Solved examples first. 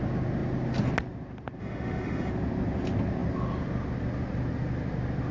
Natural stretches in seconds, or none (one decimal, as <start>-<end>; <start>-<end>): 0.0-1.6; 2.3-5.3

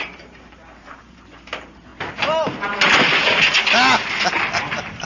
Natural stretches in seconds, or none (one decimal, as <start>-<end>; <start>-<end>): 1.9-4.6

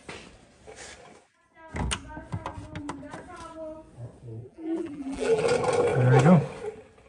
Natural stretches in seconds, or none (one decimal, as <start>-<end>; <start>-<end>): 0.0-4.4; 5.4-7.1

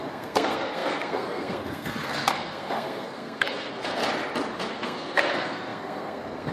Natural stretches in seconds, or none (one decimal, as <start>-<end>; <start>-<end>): 4.0-4.7

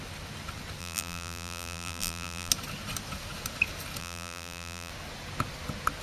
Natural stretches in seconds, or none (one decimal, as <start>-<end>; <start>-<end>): 0.0-0.8; 2.5-4.0; 4.9-6.0

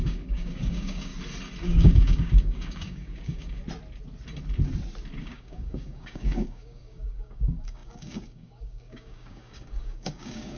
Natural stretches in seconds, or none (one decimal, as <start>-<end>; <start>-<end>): 1.1-1.6; 3.6-5.2